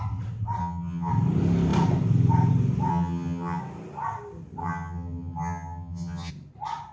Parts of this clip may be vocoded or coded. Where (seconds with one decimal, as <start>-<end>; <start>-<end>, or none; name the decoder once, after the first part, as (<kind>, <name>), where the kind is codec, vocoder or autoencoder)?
0.6-1.1 (vocoder, HiFi-GAN); 2.9-3.6; 4.6-6.3